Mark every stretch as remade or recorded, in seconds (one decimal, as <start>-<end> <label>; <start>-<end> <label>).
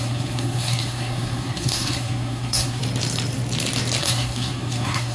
0.0-2.8 remade; 2.8-4.0 recorded; 4.0-5.1 remade